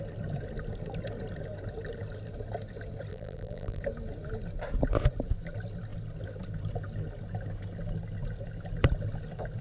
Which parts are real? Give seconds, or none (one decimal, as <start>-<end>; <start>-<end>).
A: 0.0-3.1; 3.8-9.6